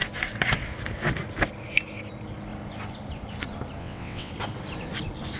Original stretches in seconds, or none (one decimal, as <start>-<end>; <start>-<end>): 0.0-3.8; 4.3-5.4